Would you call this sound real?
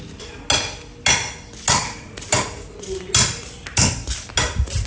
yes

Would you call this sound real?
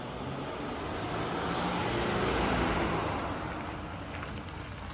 yes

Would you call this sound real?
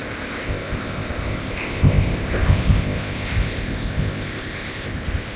no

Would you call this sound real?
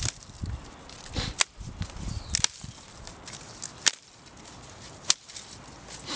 yes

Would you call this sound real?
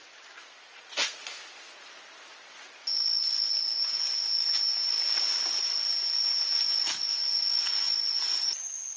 yes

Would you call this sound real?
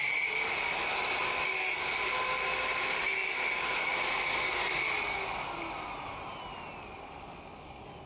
yes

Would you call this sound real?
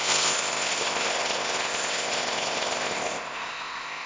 no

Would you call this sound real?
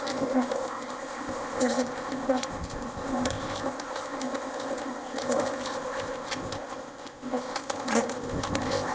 no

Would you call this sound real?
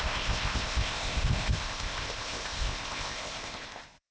no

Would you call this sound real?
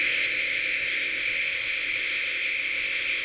no